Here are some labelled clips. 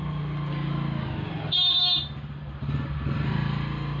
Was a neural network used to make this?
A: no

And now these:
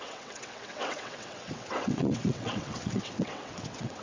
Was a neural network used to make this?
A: yes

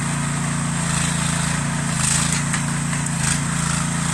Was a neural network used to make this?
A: no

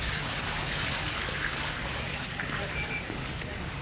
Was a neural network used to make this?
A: yes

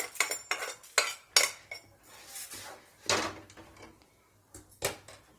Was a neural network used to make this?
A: no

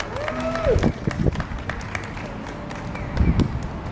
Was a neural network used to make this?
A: no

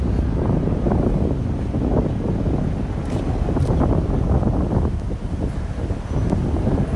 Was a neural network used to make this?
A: no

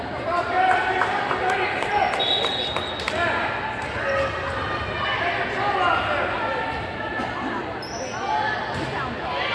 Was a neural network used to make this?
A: no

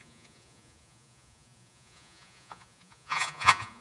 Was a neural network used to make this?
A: yes